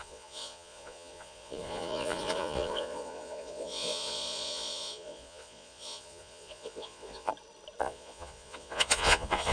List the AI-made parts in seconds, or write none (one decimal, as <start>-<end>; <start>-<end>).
0.0-7.3; 7.8-9.5